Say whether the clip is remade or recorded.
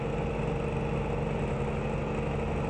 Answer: recorded